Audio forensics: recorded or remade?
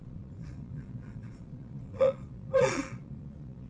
remade